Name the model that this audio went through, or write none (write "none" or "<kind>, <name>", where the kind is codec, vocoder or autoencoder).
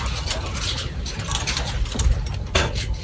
none